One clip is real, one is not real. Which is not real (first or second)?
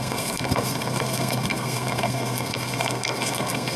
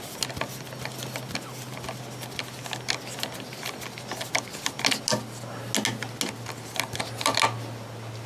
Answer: first